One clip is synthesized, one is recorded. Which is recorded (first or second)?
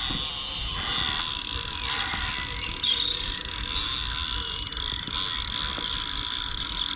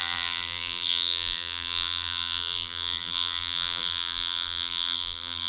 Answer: first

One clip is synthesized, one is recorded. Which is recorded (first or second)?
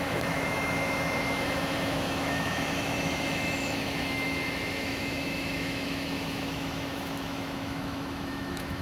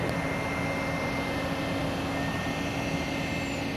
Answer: second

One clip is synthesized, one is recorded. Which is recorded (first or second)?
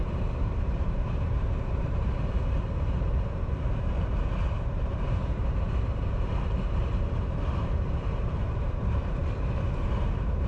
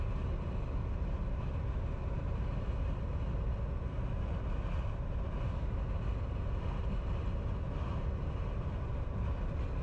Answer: second